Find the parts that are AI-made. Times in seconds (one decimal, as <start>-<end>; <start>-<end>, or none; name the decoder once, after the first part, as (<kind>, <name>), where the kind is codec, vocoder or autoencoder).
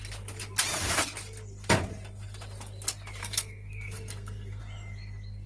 3.2-4.6 (codec, SNAC)